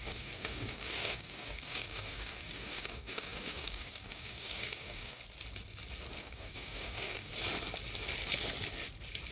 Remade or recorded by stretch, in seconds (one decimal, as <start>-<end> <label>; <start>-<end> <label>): 0.0-5.2 remade; 5.2-6.2 recorded; 6.2-7.3 remade; 7.3-9.3 recorded